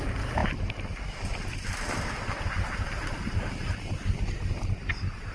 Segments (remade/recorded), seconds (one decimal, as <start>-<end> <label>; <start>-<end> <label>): 0.0-5.3 recorded